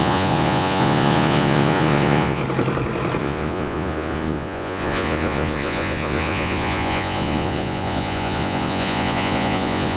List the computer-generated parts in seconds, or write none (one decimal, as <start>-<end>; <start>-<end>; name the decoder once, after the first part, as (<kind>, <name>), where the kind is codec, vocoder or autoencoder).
0.0-2.4 (vocoder, Vocos); 3.2-10.0